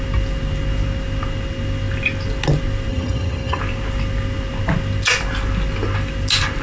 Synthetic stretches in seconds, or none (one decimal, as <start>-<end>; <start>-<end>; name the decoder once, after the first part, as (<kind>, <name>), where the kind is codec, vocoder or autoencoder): 2.9-3.6 (vocoder, HiFi-GAN)